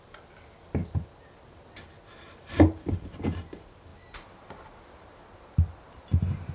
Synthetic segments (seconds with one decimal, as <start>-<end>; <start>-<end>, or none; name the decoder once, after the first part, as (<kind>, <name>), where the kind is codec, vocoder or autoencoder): none